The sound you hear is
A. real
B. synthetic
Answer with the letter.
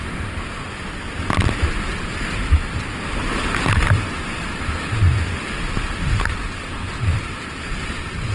A